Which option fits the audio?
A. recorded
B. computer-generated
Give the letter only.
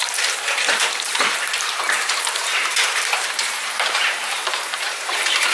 B